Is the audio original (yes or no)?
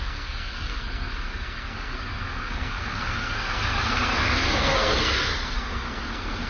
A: no